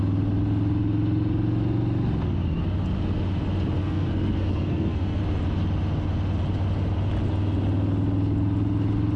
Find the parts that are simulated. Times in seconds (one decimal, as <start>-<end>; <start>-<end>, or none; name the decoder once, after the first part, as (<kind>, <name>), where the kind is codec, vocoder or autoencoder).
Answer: 3.8-5.2 (codec, SNAC)